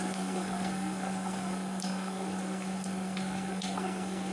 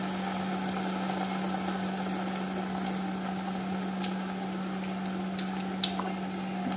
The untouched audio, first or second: second